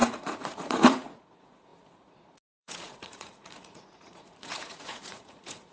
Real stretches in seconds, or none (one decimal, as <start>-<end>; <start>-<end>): none